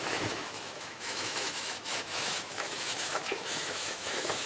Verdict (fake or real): fake